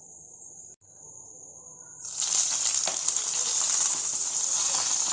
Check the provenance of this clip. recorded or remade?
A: remade